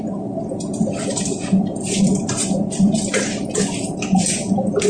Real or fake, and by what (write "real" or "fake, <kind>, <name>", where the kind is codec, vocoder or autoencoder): real